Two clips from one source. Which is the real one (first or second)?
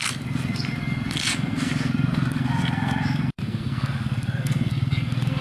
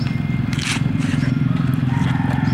second